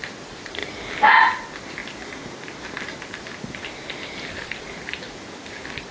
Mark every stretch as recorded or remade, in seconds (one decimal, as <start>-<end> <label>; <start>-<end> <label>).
0.0-5.9 recorded